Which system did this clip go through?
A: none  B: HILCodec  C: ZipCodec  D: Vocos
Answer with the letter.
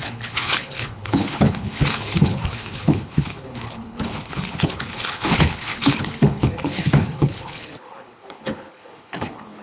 B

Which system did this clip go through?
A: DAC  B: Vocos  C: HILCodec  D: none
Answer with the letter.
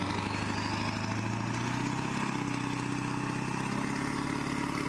D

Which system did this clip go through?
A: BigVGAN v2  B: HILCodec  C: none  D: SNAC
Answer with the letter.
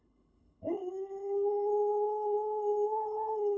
B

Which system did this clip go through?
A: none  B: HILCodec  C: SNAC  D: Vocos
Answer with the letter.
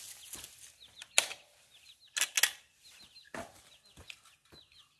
A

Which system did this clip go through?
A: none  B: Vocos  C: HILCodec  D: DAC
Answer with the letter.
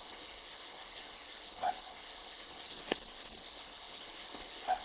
C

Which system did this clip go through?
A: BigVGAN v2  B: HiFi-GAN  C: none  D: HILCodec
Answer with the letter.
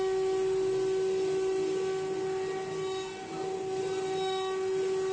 C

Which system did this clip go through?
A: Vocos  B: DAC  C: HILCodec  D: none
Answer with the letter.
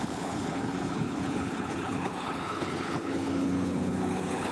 C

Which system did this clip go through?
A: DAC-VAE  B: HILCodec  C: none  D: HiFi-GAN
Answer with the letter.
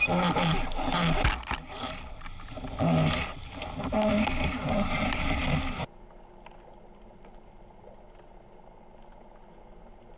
C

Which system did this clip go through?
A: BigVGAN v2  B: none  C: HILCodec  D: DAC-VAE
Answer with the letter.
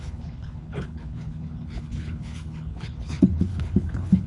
C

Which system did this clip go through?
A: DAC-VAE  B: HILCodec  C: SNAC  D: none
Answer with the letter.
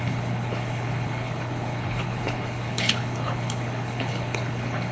B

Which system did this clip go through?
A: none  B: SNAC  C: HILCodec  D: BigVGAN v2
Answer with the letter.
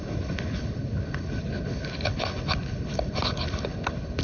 C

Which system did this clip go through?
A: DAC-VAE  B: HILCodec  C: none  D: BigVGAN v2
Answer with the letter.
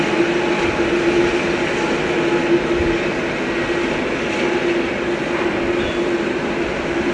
C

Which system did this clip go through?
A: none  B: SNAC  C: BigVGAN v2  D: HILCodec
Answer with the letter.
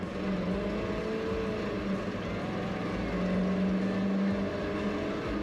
A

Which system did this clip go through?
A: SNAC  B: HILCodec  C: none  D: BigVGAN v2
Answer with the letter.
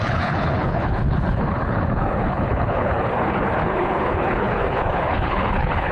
B